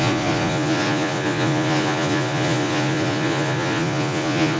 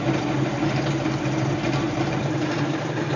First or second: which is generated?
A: first